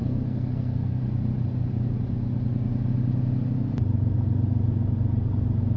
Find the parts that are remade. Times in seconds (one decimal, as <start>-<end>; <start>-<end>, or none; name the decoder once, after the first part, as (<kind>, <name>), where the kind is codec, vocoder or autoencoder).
0.0-1.0 (codec, SNAC)